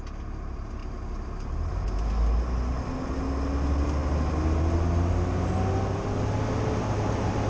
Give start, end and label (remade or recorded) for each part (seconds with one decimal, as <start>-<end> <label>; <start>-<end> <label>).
0.0-7.5 recorded